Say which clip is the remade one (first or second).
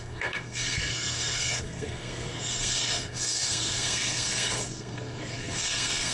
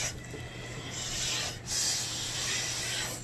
first